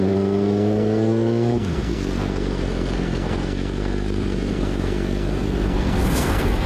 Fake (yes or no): yes